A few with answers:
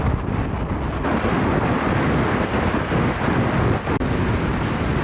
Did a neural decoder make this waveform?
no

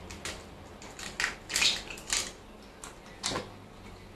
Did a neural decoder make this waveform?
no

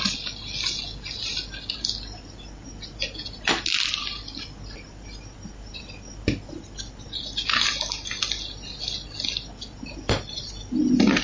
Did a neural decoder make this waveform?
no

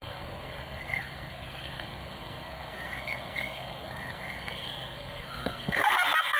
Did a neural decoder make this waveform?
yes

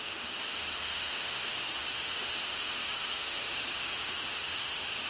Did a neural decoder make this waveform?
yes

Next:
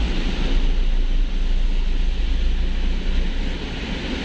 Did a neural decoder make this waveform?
no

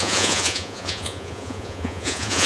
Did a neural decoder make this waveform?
yes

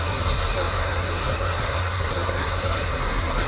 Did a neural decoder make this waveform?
yes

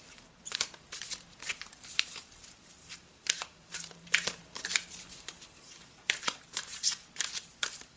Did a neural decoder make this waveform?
yes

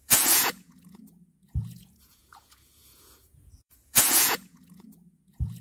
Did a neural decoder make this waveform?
yes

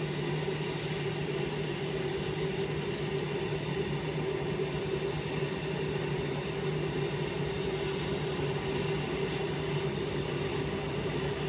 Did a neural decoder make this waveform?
no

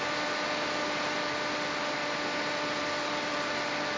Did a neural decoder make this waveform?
no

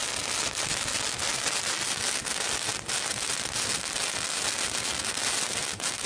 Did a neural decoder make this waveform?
no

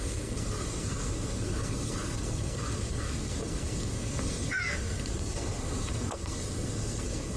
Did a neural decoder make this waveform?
yes